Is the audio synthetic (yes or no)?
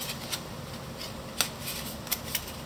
no